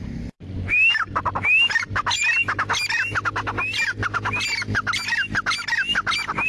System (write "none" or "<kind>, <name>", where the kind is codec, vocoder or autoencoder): none